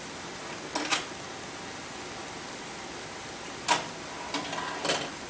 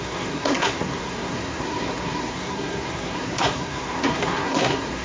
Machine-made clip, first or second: second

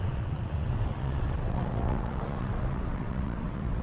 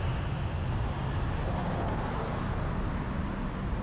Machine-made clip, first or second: first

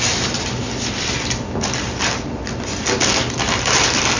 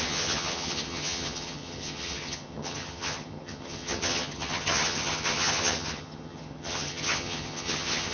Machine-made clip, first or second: second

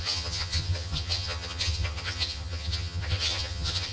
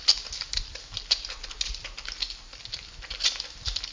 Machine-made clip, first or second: first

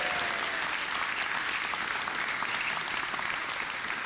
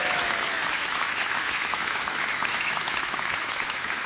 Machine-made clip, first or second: second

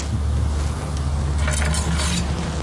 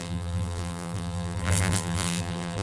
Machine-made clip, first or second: second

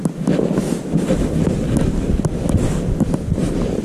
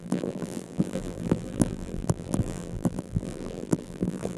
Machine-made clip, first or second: second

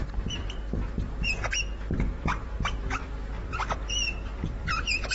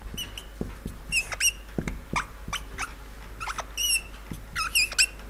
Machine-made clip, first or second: first